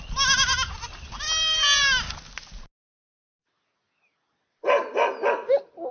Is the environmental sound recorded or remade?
recorded